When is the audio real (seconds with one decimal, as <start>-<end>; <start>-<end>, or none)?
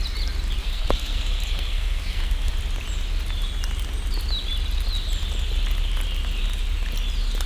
0.0-0.6; 2.5-7.5